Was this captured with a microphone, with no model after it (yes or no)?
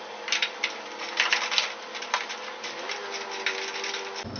yes